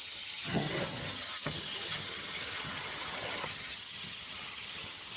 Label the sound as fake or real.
fake